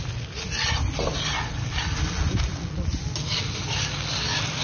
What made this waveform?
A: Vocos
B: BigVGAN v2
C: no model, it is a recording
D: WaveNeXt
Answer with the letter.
C